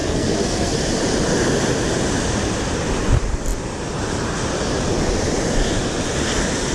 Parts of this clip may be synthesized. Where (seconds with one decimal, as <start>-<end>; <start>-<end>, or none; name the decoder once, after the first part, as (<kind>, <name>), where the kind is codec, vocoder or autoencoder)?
0.0-0.7 (codec, SNAC)